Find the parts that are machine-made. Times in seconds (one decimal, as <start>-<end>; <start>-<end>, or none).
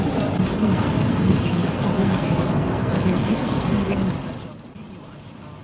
0.6-4.0